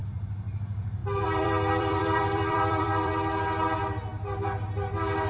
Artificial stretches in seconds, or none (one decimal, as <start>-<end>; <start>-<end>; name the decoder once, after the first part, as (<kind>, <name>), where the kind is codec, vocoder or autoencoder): 0.0-0.6 (vocoder, BigVGAN v2); 1.0-3.1